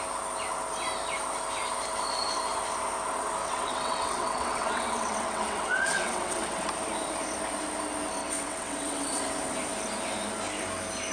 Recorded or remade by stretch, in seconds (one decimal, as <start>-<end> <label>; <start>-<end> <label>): 0.0-3.4 recorded; 3.4-6.7 remade; 6.7-8.2 recorded; 8.2-9.2 remade; 9.2-11.1 recorded